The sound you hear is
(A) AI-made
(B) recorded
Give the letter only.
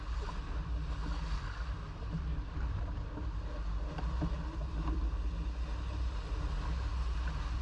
B